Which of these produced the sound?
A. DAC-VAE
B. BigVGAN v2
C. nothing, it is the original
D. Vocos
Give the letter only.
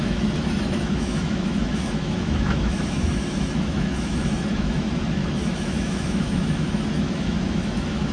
A